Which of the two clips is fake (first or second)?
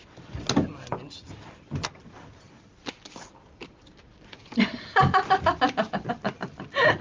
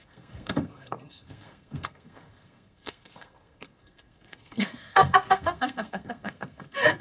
second